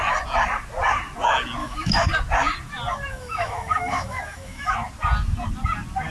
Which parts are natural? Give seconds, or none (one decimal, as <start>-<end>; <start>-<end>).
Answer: 0.0-1.6; 2.1-3.1; 4.7-6.1